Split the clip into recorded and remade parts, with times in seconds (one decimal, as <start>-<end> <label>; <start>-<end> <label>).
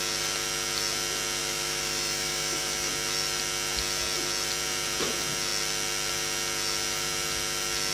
0.0-1.4 recorded; 1.4-2.9 remade; 2.9-7.9 recorded